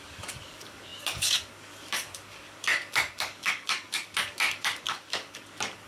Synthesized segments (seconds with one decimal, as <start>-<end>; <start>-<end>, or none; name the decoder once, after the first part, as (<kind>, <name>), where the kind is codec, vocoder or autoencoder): 0.0-5.9 (codec, DAC)